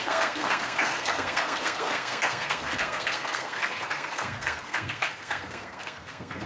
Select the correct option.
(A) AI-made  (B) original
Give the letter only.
A